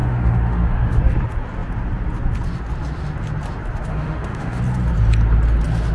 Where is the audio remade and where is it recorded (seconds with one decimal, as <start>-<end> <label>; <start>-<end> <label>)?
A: 0.0-1.0 remade; 1.0-3.9 recorded; 3.9-4.6 remade; 4.6-5.9 recorded